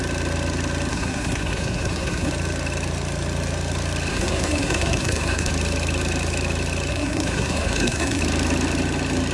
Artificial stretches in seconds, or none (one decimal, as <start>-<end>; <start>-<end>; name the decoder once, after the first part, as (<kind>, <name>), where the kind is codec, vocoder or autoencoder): 0.9-2.3 (codec, SNAC); 4.1-5.5; 6.9-8.2